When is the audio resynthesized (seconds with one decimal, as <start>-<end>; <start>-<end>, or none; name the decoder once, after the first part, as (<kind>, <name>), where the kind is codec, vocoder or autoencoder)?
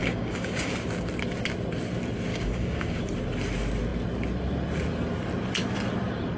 0.0-0.7 (codec, DAC); 2.3-3.0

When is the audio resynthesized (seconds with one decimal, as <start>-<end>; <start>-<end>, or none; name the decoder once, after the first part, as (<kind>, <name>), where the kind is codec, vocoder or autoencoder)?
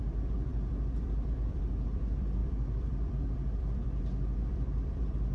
0.0-5.3 (vocoder, BigVGAN v2)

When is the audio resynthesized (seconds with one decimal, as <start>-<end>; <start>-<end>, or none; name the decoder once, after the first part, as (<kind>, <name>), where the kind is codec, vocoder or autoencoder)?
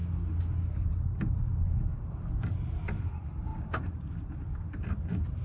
none